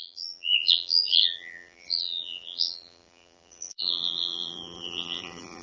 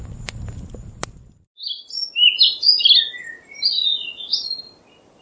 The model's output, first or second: first